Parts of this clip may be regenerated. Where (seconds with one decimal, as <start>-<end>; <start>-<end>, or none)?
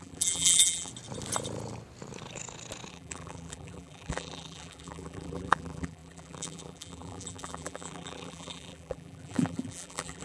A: 0.0-0.9; 2.9-10.2